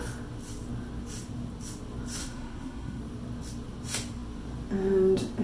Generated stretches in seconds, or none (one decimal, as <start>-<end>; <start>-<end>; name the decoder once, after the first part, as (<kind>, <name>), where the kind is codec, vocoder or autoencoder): 2.2-3.0 (codec, SNAC)